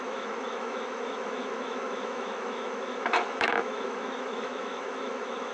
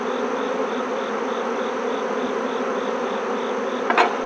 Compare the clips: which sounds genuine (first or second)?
second